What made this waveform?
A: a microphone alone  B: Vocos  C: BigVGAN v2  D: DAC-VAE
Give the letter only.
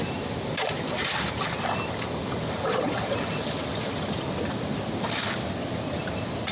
A